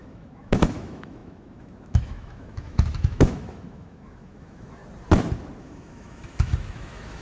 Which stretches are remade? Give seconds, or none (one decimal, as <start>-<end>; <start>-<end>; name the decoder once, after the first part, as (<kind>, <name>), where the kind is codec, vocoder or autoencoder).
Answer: 0.0-4.8 (autoencoder, DAC-VAE); 5.6-7.2